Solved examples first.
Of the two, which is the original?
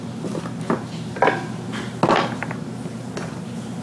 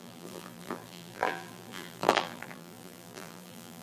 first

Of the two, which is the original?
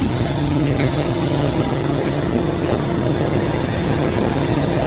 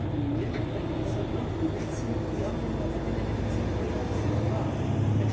second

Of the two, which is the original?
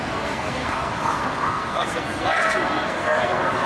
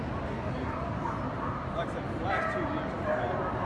second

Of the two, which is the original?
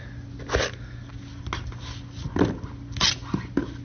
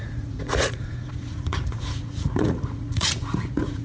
first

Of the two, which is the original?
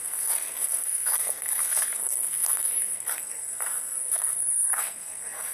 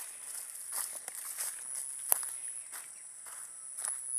second